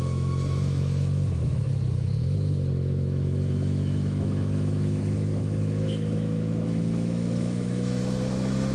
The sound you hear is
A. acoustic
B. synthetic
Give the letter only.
B